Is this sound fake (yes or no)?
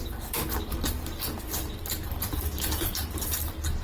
yes